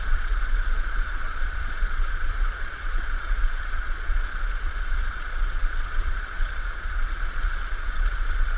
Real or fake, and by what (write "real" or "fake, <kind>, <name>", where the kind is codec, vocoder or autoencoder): fake, vocoder, Vocos